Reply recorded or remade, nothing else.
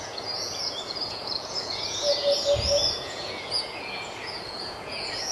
remade